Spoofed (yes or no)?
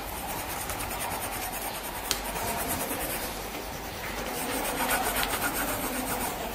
yes